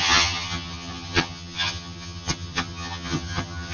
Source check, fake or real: fake